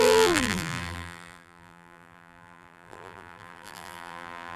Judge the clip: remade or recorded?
remade